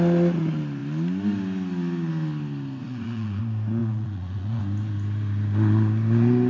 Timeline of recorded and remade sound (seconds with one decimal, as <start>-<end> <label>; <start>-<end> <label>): 0.0-2.8 recorded; 2.8-3.4 remade; 3.4-3.8 recorded; 3.8-4.6 remade; 4.6-6.5 recorded